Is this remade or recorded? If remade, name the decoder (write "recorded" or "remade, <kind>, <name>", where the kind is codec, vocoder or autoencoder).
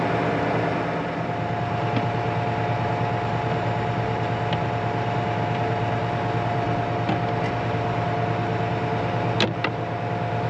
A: recorded